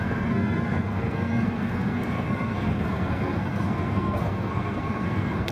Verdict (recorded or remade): remade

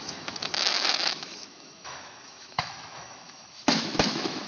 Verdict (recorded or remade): remade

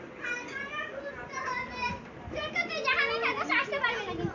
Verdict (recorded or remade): recorded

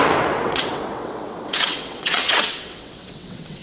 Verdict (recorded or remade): remade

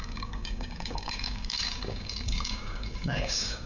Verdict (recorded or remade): remade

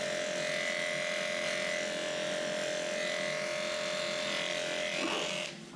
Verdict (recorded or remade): recorded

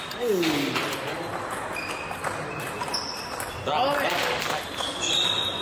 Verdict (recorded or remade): recorded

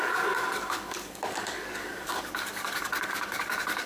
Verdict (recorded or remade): remade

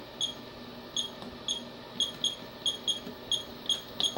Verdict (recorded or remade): recorded